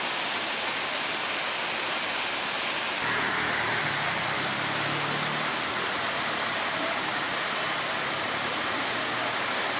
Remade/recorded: recorded